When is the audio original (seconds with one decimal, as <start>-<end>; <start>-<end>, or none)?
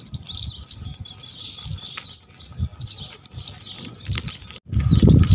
0.0-5.3